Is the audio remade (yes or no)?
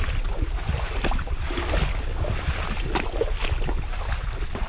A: no